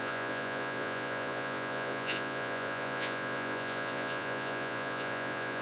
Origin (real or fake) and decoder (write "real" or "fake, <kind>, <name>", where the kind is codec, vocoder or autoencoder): fake, vocoder, Vocos